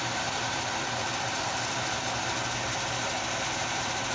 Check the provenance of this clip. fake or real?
real